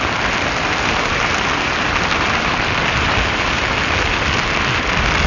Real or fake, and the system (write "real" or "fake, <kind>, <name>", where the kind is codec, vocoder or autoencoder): real